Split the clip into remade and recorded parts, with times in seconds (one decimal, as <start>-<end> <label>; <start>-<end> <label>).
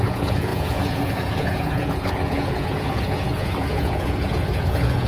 0.0-5.1 remade